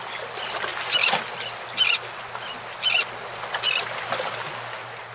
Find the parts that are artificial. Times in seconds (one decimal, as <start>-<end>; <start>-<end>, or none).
none

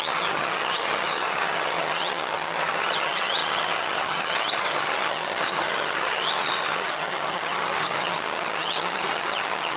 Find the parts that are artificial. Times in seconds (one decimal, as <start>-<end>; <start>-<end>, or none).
0.0-9.8

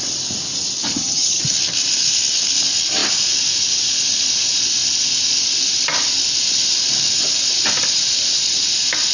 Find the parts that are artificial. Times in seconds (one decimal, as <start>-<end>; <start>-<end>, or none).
0.9-1.4

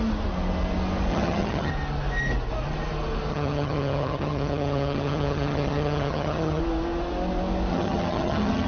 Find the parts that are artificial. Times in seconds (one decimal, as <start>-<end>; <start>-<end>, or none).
1.1-1.7; 3.3-6.6; 7.7-8.7

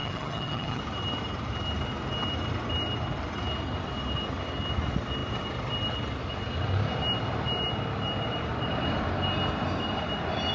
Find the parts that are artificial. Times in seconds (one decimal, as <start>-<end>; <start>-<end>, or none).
0.0-0.8

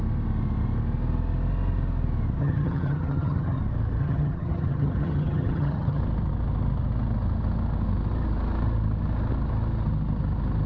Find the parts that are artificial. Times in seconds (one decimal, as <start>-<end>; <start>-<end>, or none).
2.4-3.6; 4.0-6.0